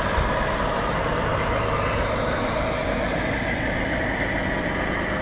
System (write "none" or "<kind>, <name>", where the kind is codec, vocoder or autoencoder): vocoder, BigVGAN v2